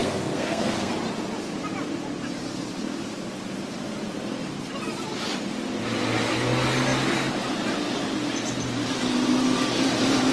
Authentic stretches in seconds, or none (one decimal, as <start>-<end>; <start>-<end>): 0.9-10.3